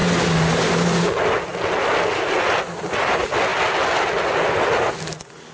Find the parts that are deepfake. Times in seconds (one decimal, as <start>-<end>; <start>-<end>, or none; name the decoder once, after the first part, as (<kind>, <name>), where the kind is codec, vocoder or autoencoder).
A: none